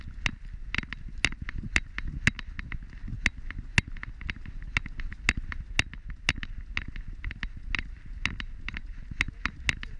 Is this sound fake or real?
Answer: real